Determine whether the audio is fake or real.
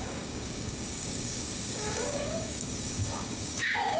fake